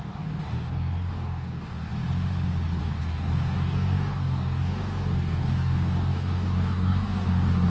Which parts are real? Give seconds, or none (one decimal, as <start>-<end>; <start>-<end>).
1.9-2.8